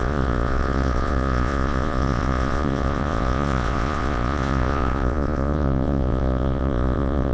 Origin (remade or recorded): remade